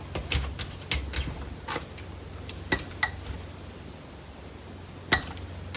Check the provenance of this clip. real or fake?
real